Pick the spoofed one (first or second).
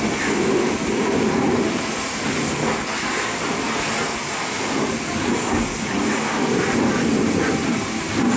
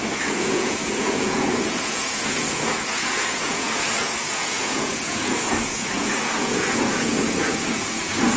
second